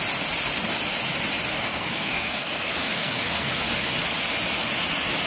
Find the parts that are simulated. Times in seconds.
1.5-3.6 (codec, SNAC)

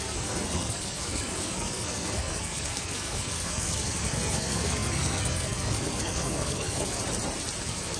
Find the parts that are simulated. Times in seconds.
0.0-7.0 (codec, SNAC); 7.6-8.0

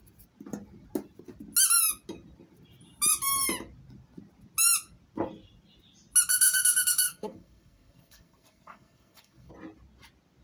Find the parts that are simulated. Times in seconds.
6.3-9.5 (codec, SNAC)

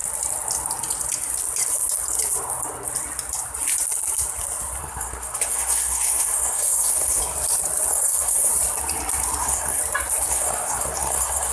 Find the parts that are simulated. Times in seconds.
4.8-7.2 (codec, SNAC); 7.9-8.5; 9.4-9.8; 10.3-11.5

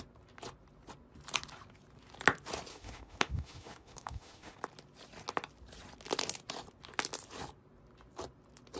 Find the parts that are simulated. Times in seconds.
2.7-4.6 (autoencoder, DAC-VAE)

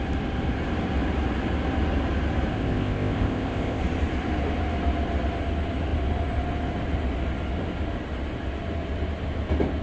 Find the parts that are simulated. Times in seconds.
2.5-3.8 (codec, ZipCodec)